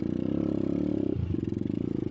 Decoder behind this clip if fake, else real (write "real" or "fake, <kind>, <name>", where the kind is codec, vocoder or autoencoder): real